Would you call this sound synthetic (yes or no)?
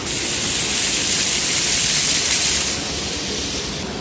no